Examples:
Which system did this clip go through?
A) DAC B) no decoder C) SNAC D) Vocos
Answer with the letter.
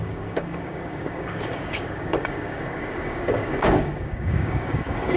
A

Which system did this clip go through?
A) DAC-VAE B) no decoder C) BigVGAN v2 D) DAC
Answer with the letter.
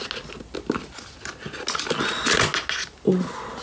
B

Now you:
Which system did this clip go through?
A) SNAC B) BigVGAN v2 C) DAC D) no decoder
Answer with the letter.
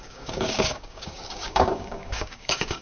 C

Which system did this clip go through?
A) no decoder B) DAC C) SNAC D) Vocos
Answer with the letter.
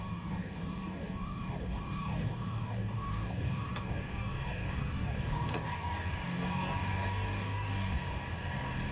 B